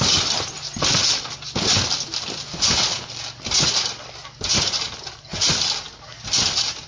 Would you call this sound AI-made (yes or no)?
no